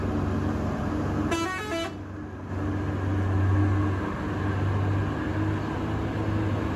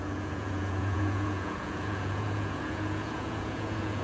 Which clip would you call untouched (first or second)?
first